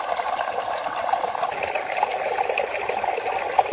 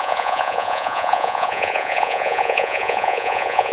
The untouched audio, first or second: first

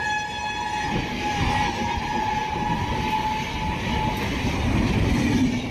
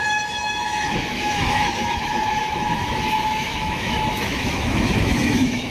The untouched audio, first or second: first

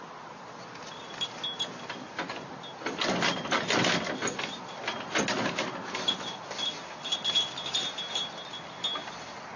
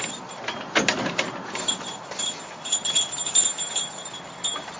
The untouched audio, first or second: first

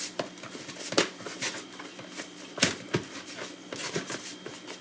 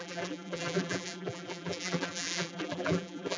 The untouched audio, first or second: first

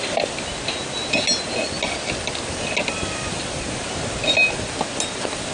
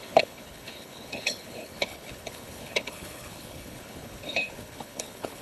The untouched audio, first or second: first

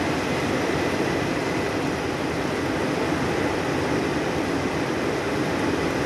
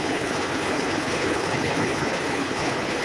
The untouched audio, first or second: first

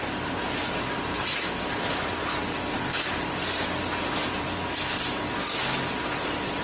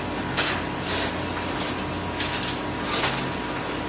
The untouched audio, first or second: second